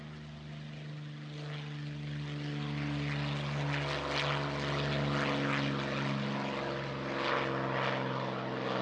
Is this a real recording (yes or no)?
yes